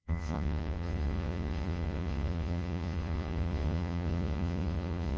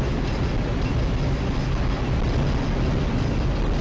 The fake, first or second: first